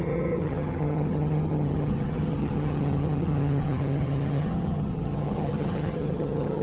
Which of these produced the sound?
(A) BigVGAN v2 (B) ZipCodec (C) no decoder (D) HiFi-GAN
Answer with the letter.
D